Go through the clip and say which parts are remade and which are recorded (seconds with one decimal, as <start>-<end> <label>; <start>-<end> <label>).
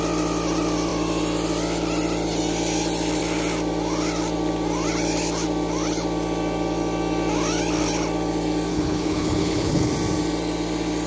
0.0-8.7 recorded; 8.7-9.9 remade; 9.9-11.1 recorded